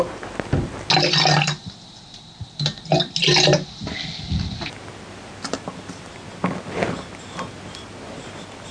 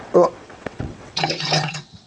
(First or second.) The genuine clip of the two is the first